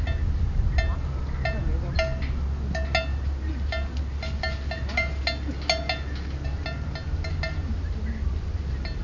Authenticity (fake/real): real